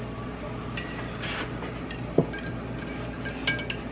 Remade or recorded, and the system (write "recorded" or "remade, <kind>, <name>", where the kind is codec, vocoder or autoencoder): recorded